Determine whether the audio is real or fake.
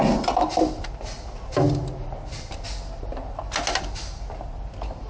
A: real